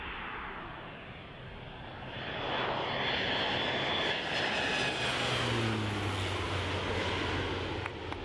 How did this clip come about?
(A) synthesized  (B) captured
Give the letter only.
B